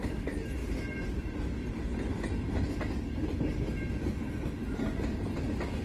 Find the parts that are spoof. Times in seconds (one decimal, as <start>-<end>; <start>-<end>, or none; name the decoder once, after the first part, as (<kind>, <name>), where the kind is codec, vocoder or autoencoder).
none